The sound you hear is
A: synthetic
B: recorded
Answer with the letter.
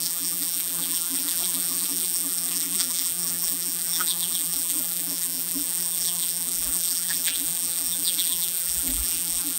A